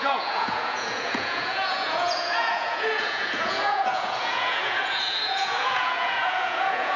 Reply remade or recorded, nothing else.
remade